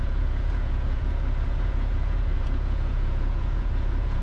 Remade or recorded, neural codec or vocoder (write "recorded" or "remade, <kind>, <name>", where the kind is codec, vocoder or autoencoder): remade, vocoder, Vocos